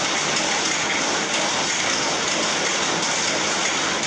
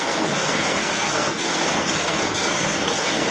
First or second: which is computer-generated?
second